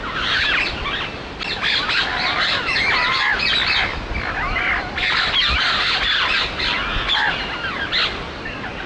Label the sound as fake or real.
real